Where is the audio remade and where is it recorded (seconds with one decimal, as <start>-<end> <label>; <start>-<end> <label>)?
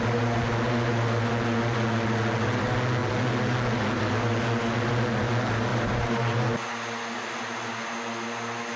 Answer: 0.0-5.7 recorded; 5.7-6.4 remade; 6.4-8.8 recorded